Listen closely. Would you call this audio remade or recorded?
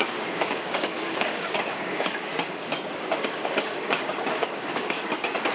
remade